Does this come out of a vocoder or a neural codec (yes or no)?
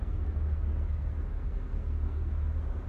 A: yes